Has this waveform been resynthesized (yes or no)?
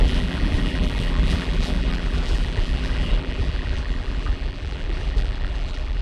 yes